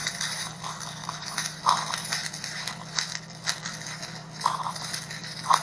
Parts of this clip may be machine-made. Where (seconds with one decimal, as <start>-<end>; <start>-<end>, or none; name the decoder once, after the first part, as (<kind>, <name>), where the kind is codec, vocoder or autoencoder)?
none